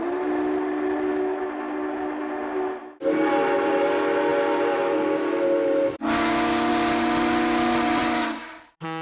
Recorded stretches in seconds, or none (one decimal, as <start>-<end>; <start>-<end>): 0.0-9.0